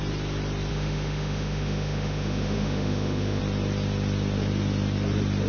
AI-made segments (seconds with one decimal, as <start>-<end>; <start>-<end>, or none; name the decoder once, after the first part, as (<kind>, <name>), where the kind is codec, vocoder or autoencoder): 0.7-3.4 (autoencoder, DAC-VAE)